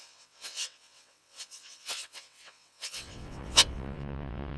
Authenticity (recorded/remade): remade